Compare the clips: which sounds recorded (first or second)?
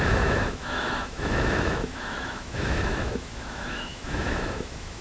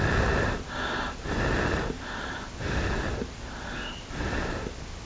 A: second